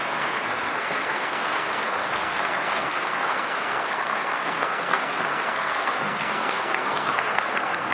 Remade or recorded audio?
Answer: remade